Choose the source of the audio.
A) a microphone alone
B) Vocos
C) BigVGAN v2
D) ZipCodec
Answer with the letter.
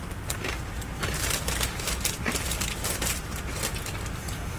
C